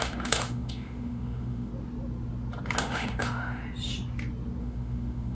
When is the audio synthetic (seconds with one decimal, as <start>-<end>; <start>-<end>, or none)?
0.0-1.7; 2.8-3.6; 4.6-5.3